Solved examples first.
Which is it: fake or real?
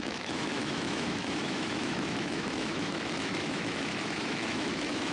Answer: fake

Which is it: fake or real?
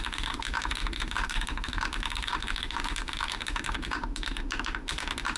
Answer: fake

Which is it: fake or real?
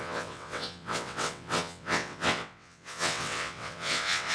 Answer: fake